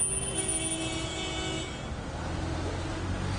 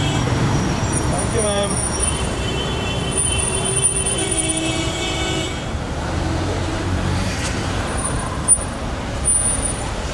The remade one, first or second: second